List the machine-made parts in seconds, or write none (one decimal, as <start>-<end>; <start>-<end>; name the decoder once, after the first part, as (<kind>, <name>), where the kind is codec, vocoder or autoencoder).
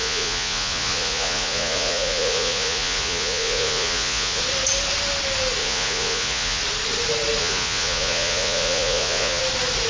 0.0-4.4 (vocoder, Vocos); 5.6-6.6; 7.4-9.4